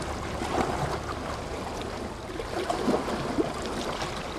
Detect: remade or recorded recorded